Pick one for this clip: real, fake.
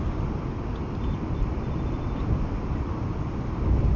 real